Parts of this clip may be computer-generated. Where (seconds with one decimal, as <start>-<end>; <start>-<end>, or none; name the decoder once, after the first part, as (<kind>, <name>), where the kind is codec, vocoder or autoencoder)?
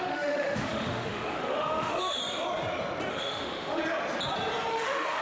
0.0-2.2 (autoencoder, DAC-VAE); 3.1-3.8; 4.7-5.2